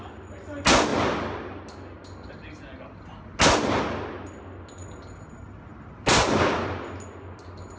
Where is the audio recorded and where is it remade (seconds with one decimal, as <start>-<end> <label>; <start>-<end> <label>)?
0.0-7.8 recorded